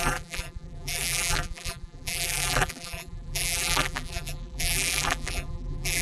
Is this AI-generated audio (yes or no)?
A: yes